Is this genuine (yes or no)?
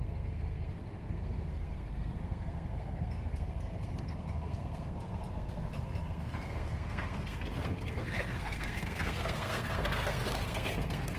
no